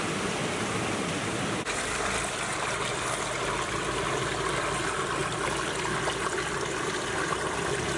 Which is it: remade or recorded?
recorded